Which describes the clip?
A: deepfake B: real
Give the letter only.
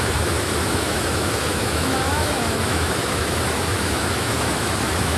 A